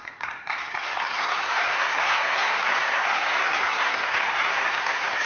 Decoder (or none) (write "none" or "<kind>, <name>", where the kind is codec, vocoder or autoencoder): codec, SNAC